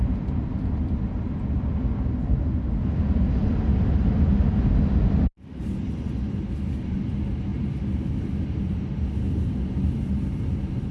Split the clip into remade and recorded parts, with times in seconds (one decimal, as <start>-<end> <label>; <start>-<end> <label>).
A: 0.0-10.9 recorded